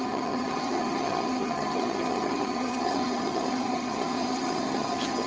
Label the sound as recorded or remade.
remade